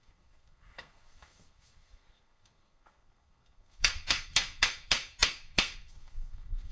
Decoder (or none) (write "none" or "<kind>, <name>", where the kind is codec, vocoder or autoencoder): codec, SNAC